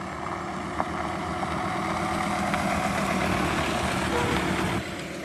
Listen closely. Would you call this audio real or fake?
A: real